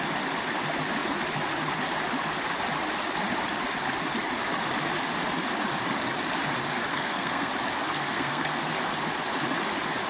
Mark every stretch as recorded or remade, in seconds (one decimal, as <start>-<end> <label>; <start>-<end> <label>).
0.0-6.9 recorded; 6.9-7.5 remade; 7.5-8.0 recorded; 8.0-8.6 remade; 8.6-10.1 recorded